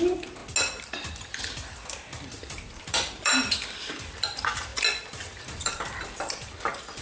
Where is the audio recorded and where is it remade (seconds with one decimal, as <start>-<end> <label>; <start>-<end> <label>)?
0.0-0.4 remade; 0.4-1.1 recorded; 1.1-4.7 remade; 4.7-5.4 recorded; 5.4-7.0 remade